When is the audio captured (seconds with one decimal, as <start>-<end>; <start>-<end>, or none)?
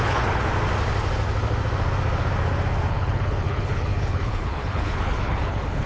0.4-2.9